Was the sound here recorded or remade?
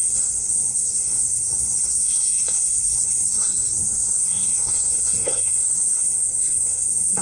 remade